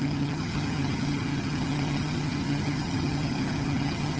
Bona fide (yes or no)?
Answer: no